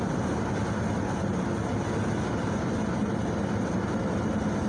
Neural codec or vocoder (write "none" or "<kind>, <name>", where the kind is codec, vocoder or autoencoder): none